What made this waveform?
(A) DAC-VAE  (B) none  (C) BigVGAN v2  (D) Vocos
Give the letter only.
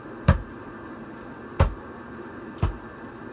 C